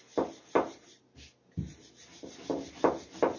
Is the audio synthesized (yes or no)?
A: no